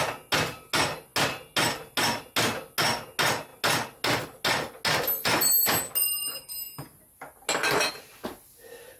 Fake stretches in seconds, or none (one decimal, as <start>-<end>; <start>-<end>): none